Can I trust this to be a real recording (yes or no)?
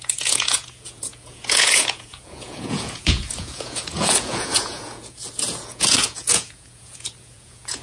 no